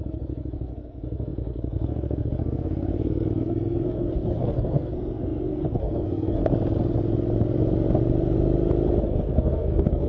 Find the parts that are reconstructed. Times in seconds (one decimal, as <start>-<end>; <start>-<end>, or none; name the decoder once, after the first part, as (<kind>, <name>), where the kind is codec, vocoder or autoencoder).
0.0-6.4 (codec, SNAC); 9.0-10.1